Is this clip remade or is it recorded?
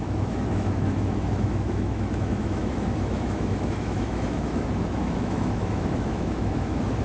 remade